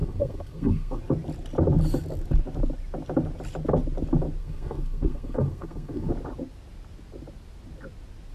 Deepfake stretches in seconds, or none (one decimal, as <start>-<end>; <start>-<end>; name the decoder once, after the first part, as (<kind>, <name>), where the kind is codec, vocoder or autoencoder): 0.0-1.0 (codec, SNAC); 4.4-6.1